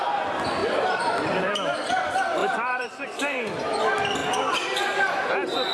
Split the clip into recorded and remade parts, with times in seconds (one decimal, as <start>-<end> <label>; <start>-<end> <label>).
0.0-2.4 recorded; 2.4-3.8 remade; 3.8-5.7 recorded